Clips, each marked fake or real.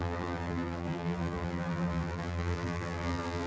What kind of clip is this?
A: fake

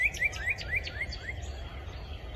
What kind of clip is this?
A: real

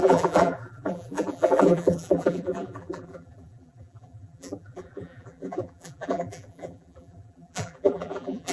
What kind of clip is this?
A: fake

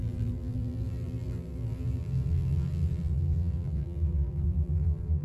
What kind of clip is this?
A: fake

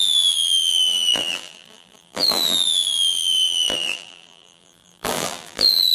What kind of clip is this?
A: fake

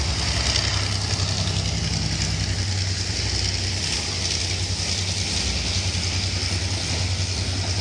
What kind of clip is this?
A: real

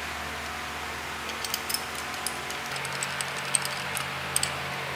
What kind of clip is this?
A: real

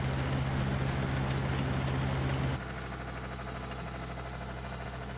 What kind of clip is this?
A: real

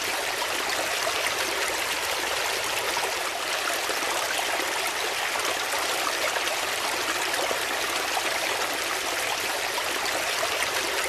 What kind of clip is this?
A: real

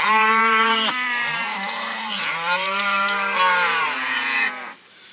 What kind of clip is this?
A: fake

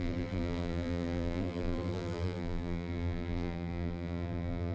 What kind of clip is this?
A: fake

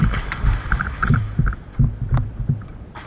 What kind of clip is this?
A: fake